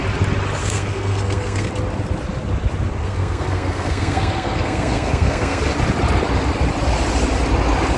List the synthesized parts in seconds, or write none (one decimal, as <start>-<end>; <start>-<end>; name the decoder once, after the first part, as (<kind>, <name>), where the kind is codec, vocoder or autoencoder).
0.6-1.7 (codec, SNAC); 3.0-5.6